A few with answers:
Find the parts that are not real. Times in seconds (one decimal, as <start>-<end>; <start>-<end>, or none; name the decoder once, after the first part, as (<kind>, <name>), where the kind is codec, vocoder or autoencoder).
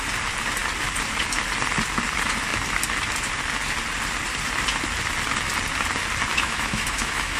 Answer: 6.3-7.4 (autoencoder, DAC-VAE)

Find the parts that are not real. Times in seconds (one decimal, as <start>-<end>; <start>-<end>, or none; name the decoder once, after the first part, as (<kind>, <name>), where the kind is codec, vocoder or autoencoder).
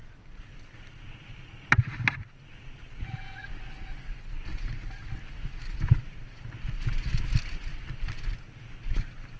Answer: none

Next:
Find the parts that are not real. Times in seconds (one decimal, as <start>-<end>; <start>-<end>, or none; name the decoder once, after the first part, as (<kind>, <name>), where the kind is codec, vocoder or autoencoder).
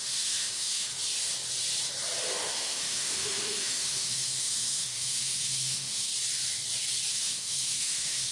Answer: 0.0-0.9 (autoencoder, DAC-VAE); 2.5-6.1; 7.1-8.3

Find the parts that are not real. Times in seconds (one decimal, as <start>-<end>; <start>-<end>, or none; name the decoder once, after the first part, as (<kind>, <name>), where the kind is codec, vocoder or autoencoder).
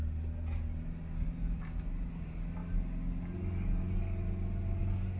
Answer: none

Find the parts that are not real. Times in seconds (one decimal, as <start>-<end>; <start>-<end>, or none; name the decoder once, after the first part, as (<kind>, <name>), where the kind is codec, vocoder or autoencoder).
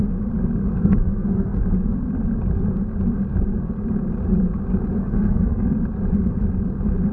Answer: 0.6-1.6 (codec, SNAC); 5.0-5.7